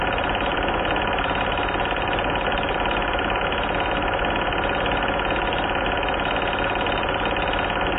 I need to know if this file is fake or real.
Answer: real